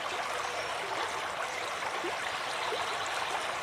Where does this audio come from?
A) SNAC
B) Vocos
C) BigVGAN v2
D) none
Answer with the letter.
D